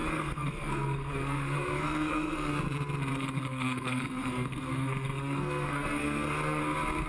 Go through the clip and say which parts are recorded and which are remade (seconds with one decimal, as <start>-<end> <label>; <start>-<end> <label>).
0.0-2.5 remade; 2.5-3.1 recorded; 3.1-6.6 remade; 6.6-7.1 recorded